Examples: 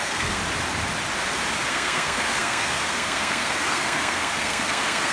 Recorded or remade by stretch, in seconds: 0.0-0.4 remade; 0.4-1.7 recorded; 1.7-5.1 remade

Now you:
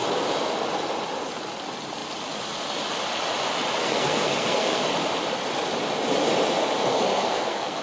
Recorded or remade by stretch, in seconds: 0.0-3.8 recorded; 3.8-4.9 remade; 4.9-6.9 recorded; 6.9-7.8 remade

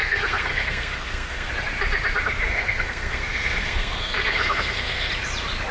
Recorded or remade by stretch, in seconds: 0.0-1.5 remade; 1.5-2.5 recorded; 2.5-5.1 remade; 5.1-5.7 recorded

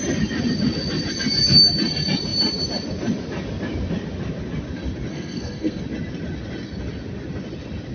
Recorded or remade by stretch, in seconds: 0.0-5.1 recorded; 5.1-5.8 remade; 5.8-7.9 recorded

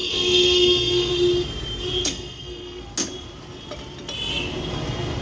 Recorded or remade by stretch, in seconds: 0.0-1.1 remade; 1.1-2.0 recorded; 2.0-2.8 remade; 2.8-5.2 recorded